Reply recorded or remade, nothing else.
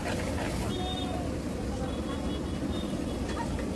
recorded